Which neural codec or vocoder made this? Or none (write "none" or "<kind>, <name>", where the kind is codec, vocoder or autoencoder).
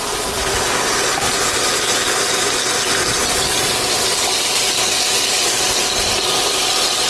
none